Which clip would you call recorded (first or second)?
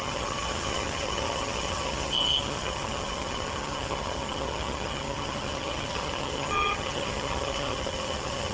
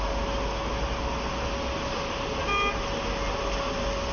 second